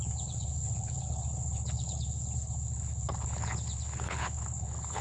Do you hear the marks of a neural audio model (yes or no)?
yes